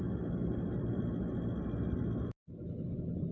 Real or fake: real